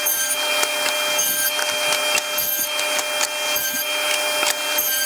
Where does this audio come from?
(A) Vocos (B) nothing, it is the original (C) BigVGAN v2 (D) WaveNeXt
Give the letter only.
B